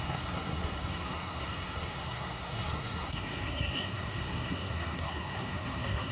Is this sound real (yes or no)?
no